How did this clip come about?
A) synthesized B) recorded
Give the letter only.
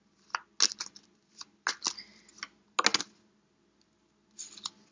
B